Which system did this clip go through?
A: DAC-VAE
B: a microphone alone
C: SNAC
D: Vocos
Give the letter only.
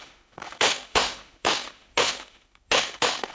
A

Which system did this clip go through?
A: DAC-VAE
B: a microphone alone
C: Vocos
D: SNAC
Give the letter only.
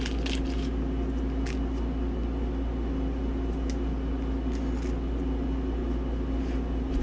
B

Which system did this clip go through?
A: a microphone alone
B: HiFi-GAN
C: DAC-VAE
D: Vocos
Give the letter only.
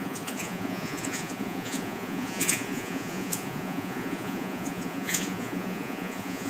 D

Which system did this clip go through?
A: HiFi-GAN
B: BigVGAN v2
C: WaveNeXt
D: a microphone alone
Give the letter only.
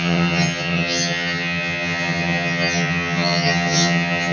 A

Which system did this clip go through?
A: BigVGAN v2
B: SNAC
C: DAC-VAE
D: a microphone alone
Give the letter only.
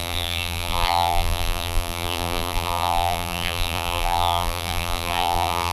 A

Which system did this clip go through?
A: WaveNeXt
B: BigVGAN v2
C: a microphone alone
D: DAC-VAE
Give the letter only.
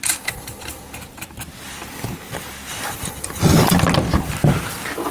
C